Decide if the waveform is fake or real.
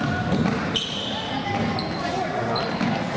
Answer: real